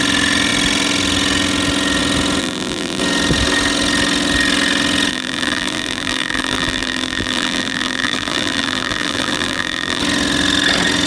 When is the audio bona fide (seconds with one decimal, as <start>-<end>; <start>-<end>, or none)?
0.0-2.4; 3.0-5.1; 10.0-11.1